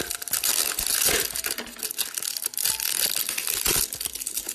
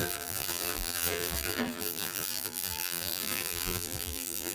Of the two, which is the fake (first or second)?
second